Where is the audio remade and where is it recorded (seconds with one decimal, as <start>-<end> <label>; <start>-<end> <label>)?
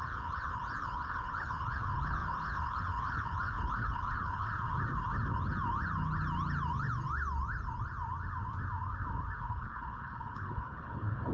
0.0-4.5 remade; 4.5-9.4 recorded; 9.4-11.3 remade